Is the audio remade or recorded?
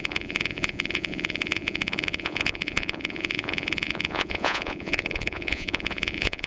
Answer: remade